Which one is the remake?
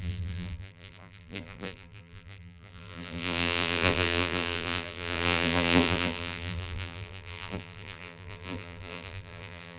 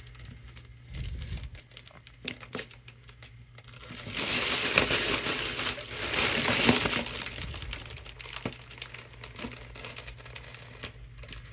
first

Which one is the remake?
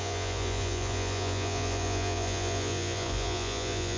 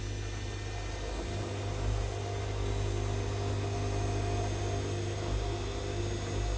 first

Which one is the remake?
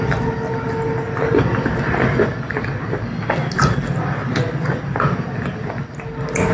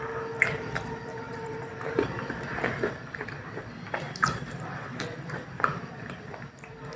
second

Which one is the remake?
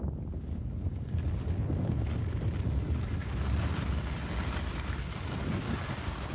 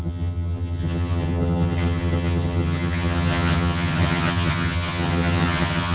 second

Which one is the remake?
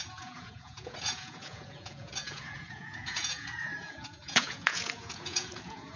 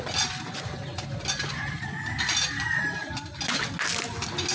first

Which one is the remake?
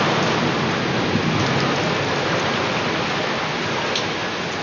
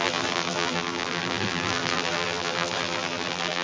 second